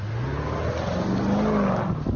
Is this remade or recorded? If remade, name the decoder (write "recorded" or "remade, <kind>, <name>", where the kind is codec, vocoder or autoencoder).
recorded